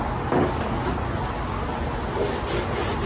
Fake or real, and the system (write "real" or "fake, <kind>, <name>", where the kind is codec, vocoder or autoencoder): real